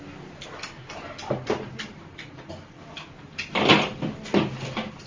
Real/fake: fake